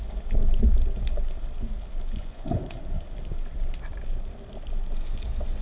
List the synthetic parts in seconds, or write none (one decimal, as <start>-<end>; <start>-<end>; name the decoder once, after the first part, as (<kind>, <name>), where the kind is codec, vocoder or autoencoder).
2.2-2.8 (vocoder, Vocos)